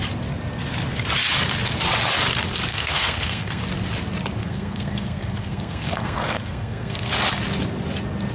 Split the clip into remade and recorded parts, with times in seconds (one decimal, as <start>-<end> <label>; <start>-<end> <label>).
0.0-2.7 recorded; 2.7-3.6 remade; 3.6-4.4 recorded; 4.4-7.1 remade; 7.1-8.3 recorded